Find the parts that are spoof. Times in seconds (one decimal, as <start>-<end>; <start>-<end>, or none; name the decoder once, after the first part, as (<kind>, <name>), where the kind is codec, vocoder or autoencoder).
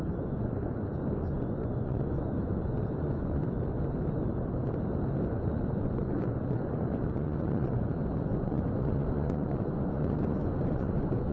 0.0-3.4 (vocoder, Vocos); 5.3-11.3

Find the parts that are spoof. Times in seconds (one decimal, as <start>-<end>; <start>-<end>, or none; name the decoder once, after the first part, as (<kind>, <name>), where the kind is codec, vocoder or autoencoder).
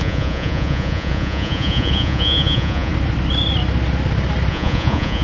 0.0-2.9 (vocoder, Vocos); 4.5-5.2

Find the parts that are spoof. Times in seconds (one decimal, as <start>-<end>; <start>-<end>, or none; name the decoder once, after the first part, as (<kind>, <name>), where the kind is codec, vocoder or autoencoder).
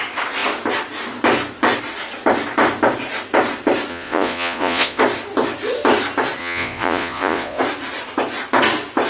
3.9-5.0 (vocoder, Vocos); 6.4-7.6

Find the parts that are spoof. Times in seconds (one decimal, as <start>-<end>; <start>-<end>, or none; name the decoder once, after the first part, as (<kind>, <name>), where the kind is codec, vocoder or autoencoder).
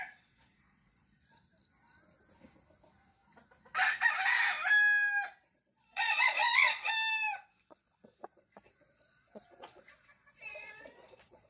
0.0-1.4 (vocoder, Vocos); 5.5-6.9; 7.5-11.5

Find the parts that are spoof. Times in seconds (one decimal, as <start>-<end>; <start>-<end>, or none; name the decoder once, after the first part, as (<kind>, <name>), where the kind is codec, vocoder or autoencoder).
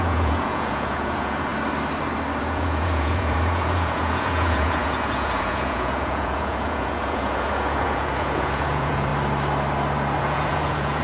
0.0-1.5 (vocoder, Vocos); 2.4-9.1; 10.2-11.0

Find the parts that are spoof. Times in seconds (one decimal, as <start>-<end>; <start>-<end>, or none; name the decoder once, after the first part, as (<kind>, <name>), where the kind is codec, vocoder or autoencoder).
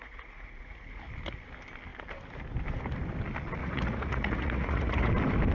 0.0-1.0 (vocoder, Vocos); 3.6-5.1